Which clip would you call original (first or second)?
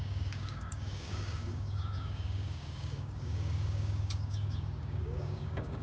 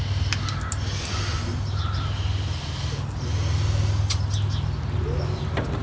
second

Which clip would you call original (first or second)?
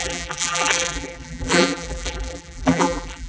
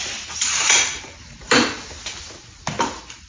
second